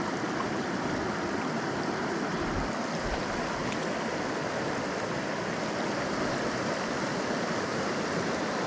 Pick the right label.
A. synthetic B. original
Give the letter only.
B